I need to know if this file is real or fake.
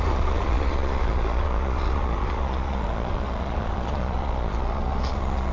fake